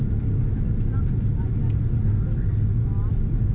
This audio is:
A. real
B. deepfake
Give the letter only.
A